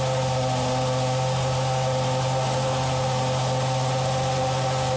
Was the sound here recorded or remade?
recorded